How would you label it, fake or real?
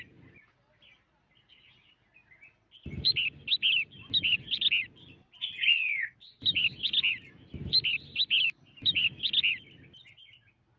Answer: real